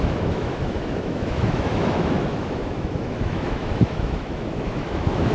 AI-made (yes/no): yes